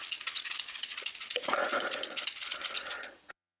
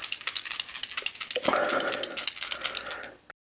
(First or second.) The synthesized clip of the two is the first